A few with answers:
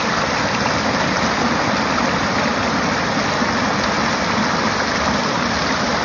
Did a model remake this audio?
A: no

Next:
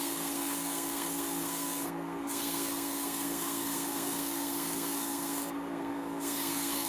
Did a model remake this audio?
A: yes